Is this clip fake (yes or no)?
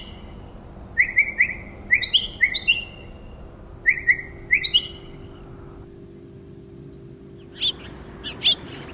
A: no